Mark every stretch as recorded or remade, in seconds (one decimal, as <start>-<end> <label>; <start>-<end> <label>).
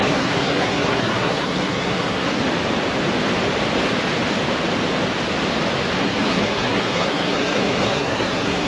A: 0.0-2.4 remade; 2.4-6.0 recorded; 6.0-8.7 remade